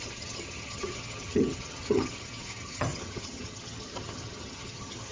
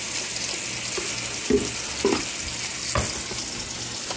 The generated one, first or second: first